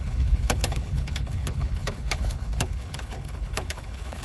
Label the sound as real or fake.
fake